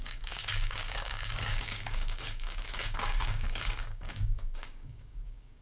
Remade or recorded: remade